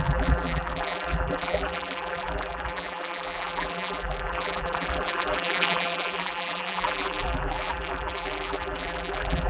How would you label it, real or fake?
fake